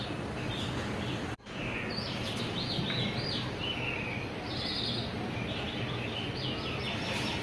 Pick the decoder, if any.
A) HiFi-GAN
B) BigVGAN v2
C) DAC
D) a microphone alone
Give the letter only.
D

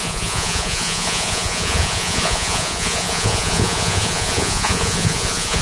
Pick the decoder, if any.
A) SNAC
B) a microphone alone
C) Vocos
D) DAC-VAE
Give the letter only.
C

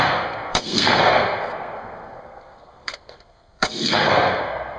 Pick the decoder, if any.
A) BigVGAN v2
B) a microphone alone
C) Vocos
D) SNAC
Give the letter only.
D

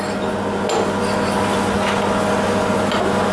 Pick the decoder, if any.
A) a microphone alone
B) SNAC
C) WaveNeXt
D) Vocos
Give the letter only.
A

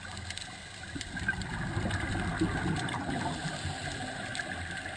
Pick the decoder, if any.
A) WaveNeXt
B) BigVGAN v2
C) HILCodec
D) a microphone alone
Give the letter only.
D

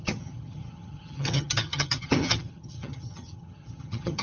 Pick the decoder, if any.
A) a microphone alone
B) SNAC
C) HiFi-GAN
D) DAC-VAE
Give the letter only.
C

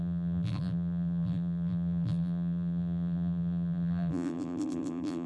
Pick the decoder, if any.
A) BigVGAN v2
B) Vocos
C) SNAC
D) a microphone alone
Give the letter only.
A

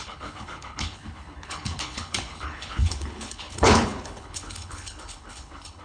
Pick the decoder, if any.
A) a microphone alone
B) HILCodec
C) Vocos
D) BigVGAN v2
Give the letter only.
B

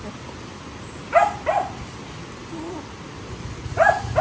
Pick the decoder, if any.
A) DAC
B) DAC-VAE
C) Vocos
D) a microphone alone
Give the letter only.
D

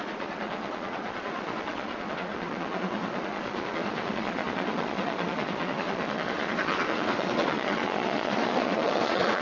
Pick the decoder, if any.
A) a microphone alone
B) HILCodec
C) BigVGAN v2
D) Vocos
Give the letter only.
D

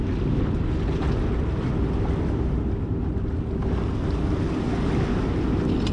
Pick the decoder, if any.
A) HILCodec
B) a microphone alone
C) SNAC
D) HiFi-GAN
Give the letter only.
B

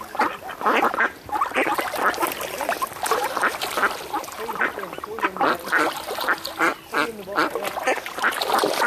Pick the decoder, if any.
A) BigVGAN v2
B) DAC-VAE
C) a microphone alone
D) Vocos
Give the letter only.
C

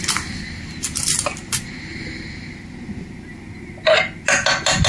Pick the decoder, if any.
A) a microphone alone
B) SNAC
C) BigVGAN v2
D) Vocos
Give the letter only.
A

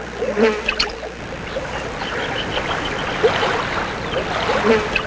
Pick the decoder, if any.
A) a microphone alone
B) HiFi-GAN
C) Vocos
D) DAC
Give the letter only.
A